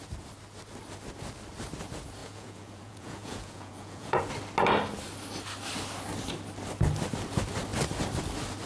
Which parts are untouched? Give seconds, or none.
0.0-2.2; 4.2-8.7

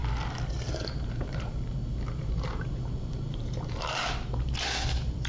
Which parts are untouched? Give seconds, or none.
0.0-0.7; 4.0-4.6

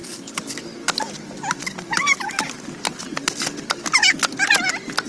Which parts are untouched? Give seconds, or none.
0.0-5.1

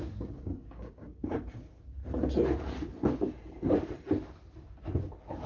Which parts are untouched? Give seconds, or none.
2.0-5.5

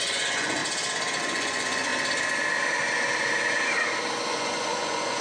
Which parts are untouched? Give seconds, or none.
0.6-1.2; 1.9-4.3

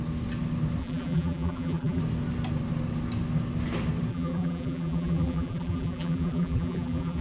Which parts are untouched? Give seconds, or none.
0.0-0.8; 2.0-4.1

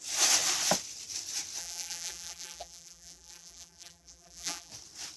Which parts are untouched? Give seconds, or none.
0.0-1.6; 4.7-5.2

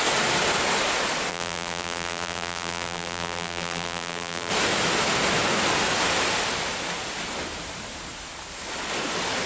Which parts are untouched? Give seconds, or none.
0.0-1.3; 4.5-9.5